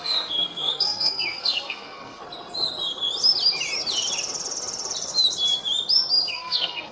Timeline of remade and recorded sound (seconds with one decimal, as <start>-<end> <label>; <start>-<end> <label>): 0.0-2.2 remade; 2.2-6.3 recorded; 6.3-6.9 remade